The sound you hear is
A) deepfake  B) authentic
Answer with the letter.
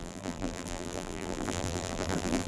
A